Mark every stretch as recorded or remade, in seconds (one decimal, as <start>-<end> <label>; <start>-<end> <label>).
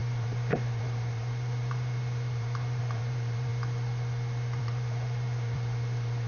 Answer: 0.0-3.5 remade; 3.5-4.6 recorded; 4.6-6.3 remade